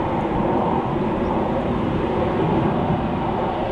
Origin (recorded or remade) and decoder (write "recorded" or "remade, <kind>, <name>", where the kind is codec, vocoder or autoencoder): recorded